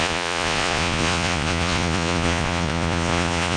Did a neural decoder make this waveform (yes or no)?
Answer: yes